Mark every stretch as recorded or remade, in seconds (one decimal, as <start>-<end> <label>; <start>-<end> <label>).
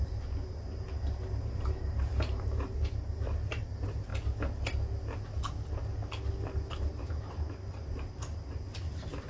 0.0-4.1 remade; 4.1-6.7 recorded; 6.7-9.3 remade